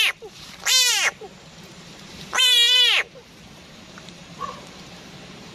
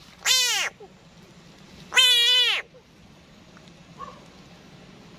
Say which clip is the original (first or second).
second